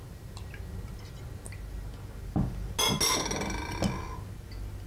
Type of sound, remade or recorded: recorded